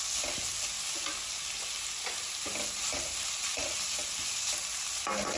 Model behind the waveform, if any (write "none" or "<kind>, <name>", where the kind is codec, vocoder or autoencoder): none